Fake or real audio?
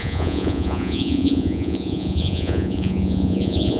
fake